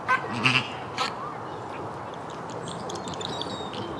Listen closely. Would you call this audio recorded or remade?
recorded